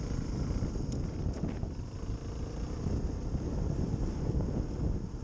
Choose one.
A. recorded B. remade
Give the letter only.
A